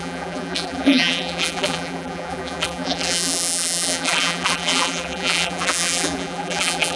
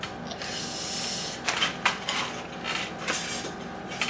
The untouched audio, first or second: second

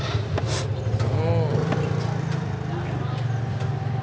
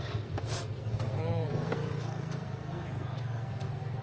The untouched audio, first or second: first